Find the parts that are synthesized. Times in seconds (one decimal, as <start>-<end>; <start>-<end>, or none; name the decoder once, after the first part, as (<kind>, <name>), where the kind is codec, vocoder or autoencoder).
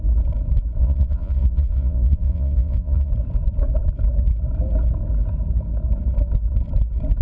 0.8-3.1 (vocoder, Vocos)